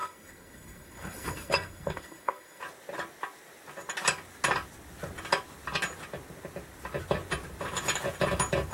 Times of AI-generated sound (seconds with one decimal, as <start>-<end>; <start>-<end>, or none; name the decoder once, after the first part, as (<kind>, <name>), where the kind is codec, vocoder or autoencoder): 0.0-2.6 (codec, SNAC)